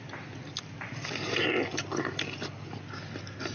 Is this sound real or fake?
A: real